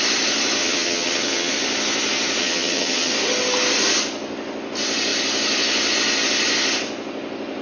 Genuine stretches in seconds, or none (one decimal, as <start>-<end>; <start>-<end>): 0.0-0.6; 1.5-2.4; 3.1-7.6